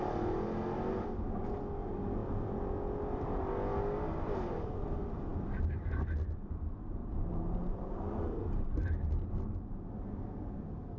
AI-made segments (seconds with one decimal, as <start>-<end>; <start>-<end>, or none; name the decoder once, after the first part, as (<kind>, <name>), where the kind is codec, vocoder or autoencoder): none